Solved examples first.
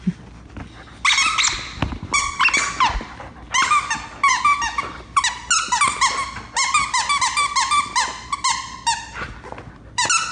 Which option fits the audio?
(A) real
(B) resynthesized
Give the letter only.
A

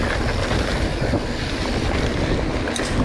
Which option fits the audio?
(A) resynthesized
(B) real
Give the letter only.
B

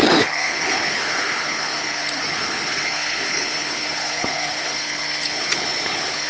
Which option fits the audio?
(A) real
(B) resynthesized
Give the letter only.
B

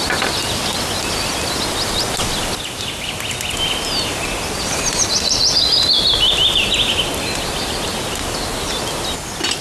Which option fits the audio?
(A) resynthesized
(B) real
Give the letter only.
B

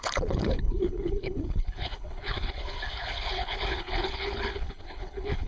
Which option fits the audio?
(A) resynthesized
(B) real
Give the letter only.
A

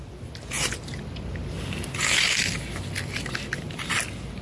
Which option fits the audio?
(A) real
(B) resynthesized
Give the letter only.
A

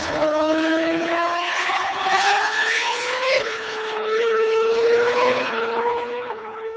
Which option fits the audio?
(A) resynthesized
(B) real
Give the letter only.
A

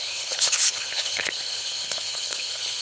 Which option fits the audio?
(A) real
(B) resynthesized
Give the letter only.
B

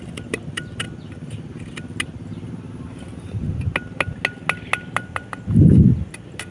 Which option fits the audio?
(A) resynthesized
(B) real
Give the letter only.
B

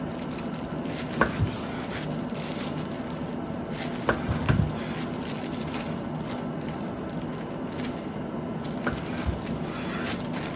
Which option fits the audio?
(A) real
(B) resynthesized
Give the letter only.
A